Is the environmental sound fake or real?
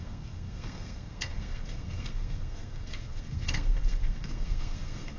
fake